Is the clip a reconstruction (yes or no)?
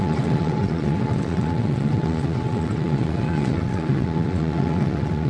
yes